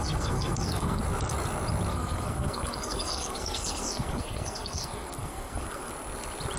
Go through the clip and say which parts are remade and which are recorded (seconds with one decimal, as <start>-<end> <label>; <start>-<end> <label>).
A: 0.0-1.0 remade; 1.0-1.9 recorded; 1.9-5.9 remade; 5.9-6.6 recorded